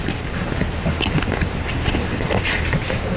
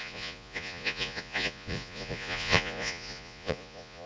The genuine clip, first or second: first